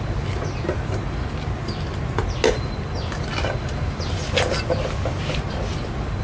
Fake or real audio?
real